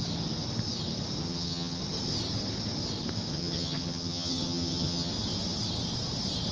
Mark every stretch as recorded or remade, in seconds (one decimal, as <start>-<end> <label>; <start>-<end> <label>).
0.0-1.2 recorded; 1.2-1.8 remade; 1.8-3.3 recorded; 3.3-5.1 remade; 5.1-6.5 recorded